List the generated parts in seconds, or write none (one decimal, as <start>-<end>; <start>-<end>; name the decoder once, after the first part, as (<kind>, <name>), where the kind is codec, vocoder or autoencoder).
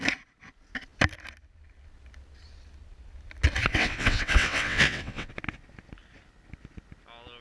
3.7-5.3 (vocoder, WaveNeXt)